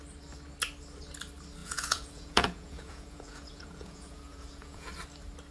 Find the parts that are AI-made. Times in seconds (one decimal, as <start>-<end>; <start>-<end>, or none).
1.6-4.9